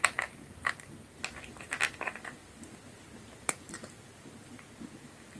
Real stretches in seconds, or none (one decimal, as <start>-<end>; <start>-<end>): 0.0-5.4